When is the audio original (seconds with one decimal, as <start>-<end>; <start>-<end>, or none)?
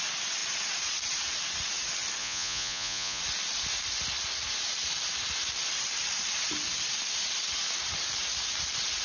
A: 0.0-2.2; 3.2-9.0